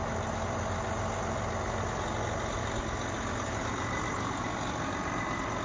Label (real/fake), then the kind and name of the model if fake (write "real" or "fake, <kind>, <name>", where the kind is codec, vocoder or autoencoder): real